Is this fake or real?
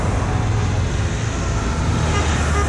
real